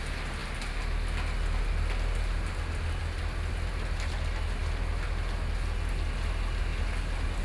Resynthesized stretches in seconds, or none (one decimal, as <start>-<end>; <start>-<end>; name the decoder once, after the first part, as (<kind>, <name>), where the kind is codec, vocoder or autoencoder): none